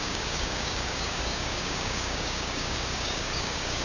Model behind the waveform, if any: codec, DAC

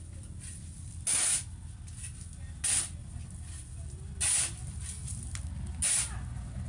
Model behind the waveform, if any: none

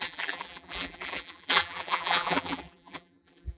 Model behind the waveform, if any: vocoder, BigVGAN v2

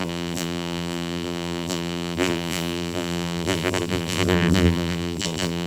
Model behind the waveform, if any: vocoder, BigVGAN v2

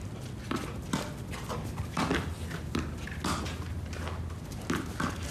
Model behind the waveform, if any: none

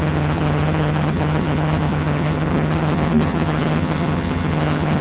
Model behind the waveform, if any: vocoder, HiFi-GAN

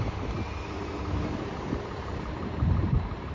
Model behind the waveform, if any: vocoder, BigVGAN v2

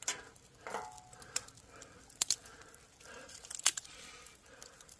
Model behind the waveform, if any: none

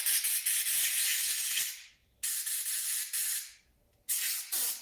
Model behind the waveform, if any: none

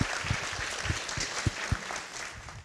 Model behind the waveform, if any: none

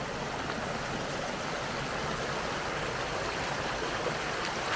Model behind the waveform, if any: none